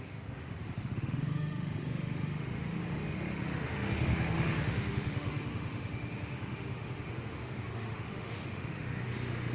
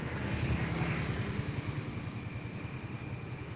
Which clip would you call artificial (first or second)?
first